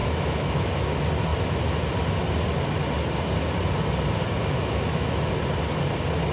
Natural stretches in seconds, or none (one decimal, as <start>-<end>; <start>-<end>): 0.7-4.4; 5.3-6.3